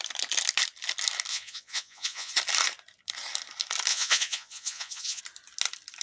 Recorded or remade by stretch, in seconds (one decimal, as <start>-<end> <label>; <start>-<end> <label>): 0.0-1.3 recorded; 1.3-2.3 remade; 2.3-3.9 recorded; 3.9-5.2 remade; 5.2-6.0 recorded